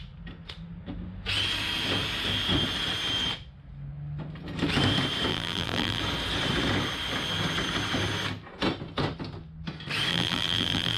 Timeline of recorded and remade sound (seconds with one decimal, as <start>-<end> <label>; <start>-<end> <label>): 0.0-5.3 recorded; 5.3-6.0 remade; 6.0-10.1 recorded; 10.1-11.0 remade